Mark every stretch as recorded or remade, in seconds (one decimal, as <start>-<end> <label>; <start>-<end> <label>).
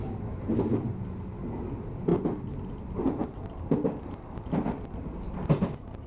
0.0-6.1 recorded